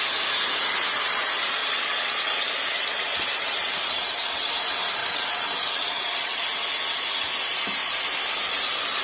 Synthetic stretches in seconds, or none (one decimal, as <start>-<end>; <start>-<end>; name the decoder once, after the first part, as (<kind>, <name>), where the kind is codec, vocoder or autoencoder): 1.6-4.5 (vocoder, WaveNeXt); 5.0-6.4